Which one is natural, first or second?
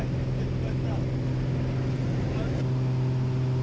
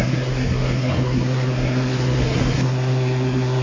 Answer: first